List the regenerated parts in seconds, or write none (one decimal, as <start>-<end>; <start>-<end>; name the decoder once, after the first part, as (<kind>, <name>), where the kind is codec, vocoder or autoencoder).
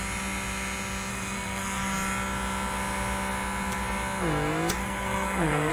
1.1-1.8 (codec, SNAC); 4.8-5.7